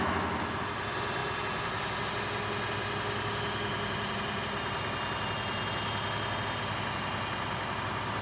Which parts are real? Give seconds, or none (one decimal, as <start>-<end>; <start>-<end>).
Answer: 0.0-8.2